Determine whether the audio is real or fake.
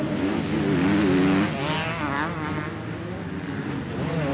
real